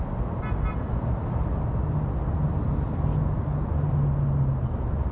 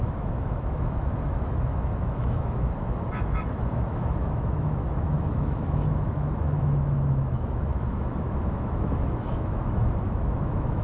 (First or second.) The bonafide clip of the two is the first